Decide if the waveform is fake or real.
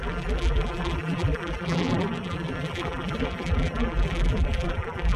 fake